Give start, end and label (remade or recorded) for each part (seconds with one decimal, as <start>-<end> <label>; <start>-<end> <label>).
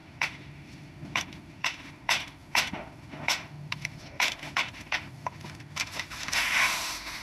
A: 0.0-7.2 remade